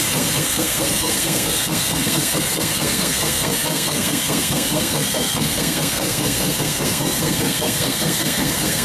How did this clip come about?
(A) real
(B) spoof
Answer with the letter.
B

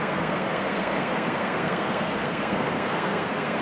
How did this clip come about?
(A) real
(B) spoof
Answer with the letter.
B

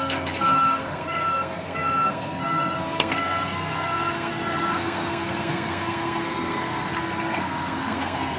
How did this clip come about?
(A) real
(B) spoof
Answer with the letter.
B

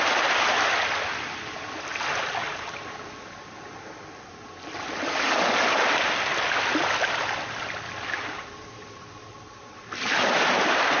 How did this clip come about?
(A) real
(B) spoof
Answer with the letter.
A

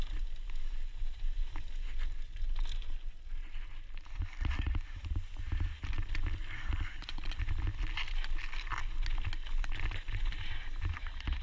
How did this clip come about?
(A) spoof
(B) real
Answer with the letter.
B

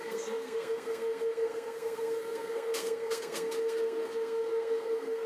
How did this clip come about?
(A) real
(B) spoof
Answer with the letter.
B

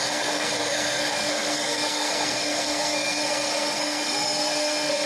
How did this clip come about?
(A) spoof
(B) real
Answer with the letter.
A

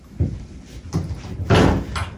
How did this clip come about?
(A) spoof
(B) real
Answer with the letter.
B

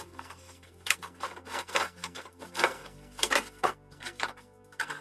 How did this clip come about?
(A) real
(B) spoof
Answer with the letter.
B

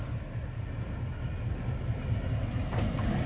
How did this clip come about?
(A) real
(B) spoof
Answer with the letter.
A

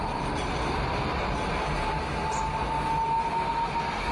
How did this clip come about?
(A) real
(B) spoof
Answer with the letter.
A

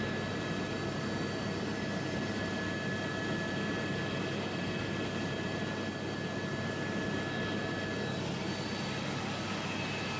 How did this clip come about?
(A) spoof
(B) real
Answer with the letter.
B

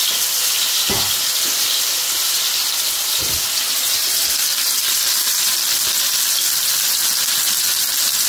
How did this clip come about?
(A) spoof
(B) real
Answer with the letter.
B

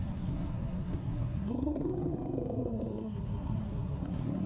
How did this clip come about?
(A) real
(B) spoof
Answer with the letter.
B